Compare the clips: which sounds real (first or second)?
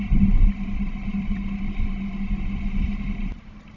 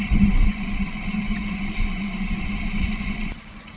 first